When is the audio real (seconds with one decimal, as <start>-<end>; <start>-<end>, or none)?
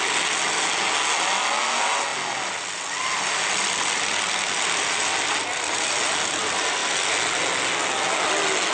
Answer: 0.0-8.7